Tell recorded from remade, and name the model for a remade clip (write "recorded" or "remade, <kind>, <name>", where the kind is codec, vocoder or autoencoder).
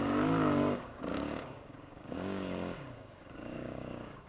remade, codec, DAC